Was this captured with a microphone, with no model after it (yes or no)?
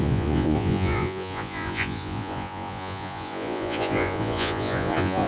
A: no